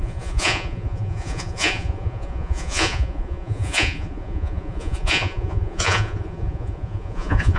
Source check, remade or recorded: remade